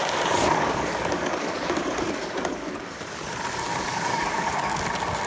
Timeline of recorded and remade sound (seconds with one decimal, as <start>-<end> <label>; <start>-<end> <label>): 0.0-3.2 remade; 3.2-3.7 recorded; 3.7-4.8 remade; 4.8-5.3 recorded